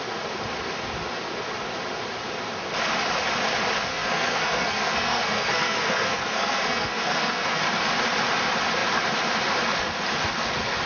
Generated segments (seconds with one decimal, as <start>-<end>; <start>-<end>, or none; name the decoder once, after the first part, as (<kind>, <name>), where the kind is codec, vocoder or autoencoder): 3.9-7.6 (codec, SNAC)